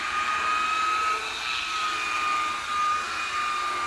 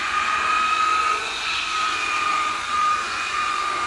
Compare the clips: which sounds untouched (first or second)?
first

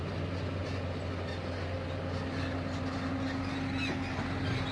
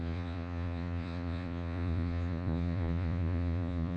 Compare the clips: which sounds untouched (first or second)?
first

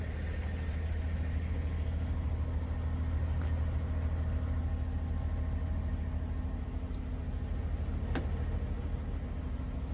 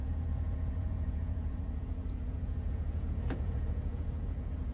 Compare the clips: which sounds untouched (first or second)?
first